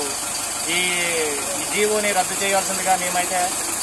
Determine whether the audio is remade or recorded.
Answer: recorded